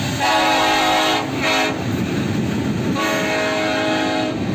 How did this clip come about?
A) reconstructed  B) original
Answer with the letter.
B